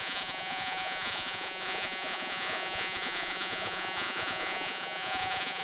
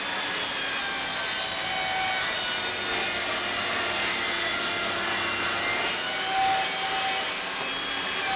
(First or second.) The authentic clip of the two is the second